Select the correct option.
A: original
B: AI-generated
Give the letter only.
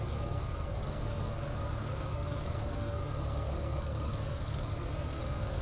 B